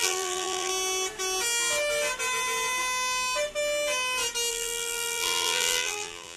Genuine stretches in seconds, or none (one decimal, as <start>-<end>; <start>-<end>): 0.7-4.5